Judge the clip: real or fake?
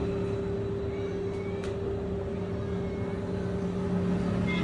real